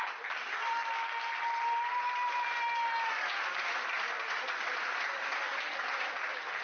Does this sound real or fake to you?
real